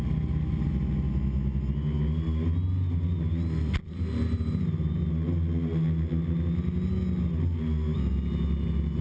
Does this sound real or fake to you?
real